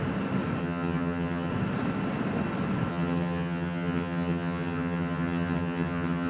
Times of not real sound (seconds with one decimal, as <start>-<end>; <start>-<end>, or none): 0.6-1.5; 2.9-6.3